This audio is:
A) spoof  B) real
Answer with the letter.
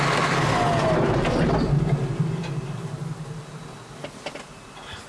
B